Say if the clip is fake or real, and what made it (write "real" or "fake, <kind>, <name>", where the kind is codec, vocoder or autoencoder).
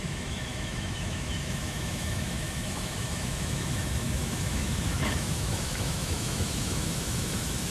fake, autoencoder, DAC-VAE